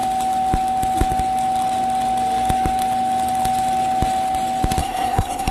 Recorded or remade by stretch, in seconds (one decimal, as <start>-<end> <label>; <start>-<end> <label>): 0.0-4.8 recorded; 4.8-5.5 remade